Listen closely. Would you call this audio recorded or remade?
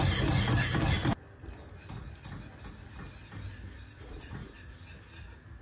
recorded